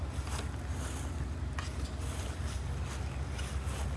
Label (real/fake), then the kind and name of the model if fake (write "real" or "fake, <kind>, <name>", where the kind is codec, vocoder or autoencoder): real